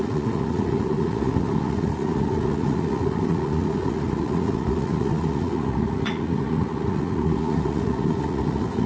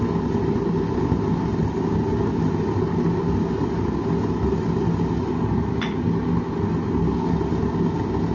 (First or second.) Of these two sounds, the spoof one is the first